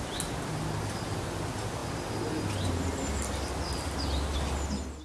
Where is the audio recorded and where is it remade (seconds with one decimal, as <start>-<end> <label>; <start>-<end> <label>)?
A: 0.0-5.0 recorded

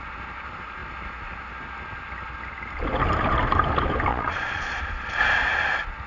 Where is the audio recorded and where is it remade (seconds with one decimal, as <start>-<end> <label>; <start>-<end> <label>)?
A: 0.0-4.1 recorded; 4.1-4.8 remade; 4.8-6.1 recorded

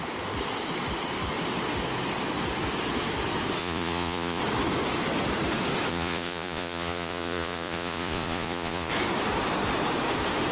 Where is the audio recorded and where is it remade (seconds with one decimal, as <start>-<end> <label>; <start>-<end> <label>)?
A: 0.0-3.6 recorded; 3.6-4.4 remade; 4.4-5.9 recorded; 5.9-8.9 remade; 8.9-10.5 recorded

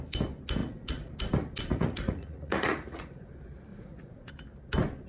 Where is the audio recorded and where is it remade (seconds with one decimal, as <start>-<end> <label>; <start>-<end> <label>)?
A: 0.0-0.6 recorded; 0.6-1.1 remade; 1.1-1.7 recorded; 1.7-3.3 remade; 3.3-3.7 recorded; 3.7-4.3 remade; 4.3-5.1 recorded